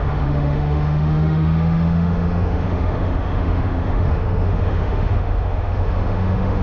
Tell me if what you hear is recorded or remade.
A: remade